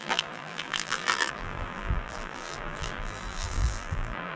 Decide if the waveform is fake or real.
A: fake